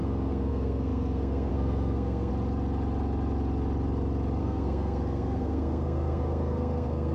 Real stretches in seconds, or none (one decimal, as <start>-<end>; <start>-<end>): 2.3-4.4

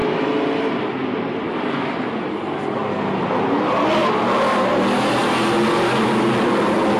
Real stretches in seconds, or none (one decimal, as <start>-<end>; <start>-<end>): 0.0-7.0

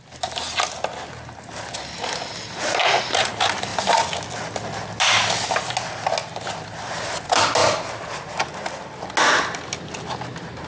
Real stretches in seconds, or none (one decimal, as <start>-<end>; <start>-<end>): 0.0-10.7

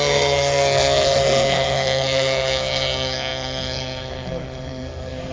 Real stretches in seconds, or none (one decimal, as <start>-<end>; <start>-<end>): none

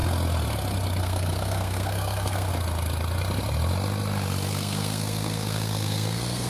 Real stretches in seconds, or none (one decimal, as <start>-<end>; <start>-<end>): 0.0-1.0; 2.5-4.5